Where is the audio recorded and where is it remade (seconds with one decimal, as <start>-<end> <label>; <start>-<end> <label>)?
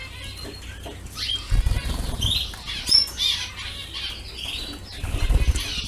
0.0-5.9 recorded